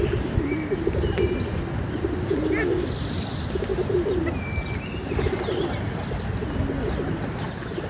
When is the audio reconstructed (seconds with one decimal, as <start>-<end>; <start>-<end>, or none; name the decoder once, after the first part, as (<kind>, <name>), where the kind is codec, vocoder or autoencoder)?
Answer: none